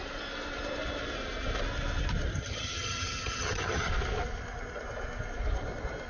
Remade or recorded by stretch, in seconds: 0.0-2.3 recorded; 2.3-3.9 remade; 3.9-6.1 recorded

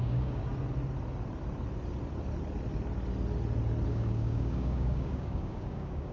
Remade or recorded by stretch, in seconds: 0.0-0.4 remade; 0.4-3.9 recorded; 3.9-6.1 remade

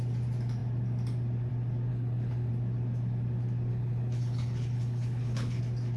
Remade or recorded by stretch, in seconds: 0.0-1.9 recorded; 1.9-2.5 remade; 2.5-3.7 recorded; 3.7-5.6 remade; 5.6-6.0 recorded

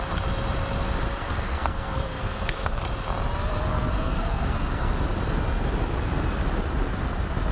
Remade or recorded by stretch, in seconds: 0.0-1.2 recorded; 1.2-2.8 remade; 2.8-3.7 recorded; 3.7-4.9 remade; 4.9-7.5 recorded

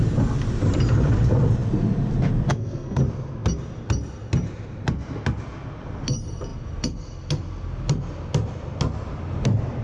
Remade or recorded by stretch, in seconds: 0.0-2.5 recorded; 2.5-3.0 remade; 3.0-9.8 recorded

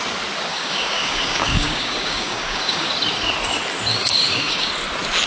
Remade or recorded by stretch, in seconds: 0.0-0.5 recorded; 0.5-2.9 remade; 2.9-3.9 recorded; 3.9-4.7 remade; 4.7-5.3 recorded

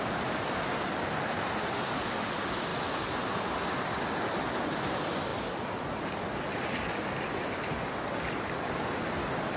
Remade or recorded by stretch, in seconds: 0.0-9.6 recorded